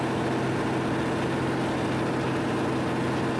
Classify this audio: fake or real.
real